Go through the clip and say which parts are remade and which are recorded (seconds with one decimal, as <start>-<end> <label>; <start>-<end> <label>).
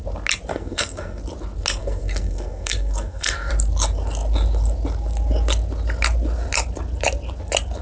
0.0-0.5 recorded; 0.5-1.2 remade; 1.2-1.8 recorded; 1.8-3.5 remade; 3.5-7.8 recorded